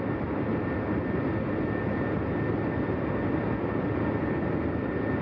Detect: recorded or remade recorded